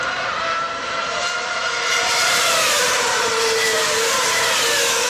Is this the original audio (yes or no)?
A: no